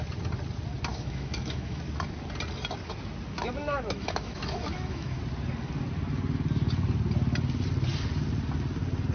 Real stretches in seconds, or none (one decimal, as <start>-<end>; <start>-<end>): 0.0-0.9; 1.8-3.6; 5.2-9.1